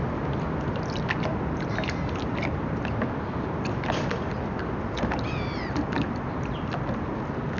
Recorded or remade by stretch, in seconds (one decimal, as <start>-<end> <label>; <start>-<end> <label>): 0.0-7.6 recorded